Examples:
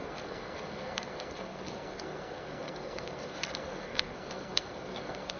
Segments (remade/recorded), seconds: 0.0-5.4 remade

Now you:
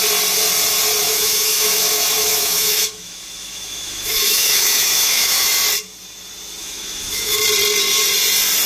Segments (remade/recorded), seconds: 0.0-1.0 recorded; 1.0-5.5 remade; 5.5-6.6 recorded; 6.6-7.4 remade; 7.4-8.7 recorded

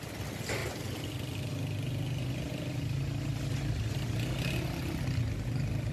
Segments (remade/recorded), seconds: 0.0-5.9 recorded

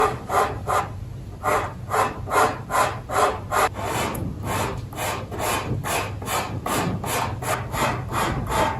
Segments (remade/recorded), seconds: 0.0-0.8 remade; 0.8-8.8 recorded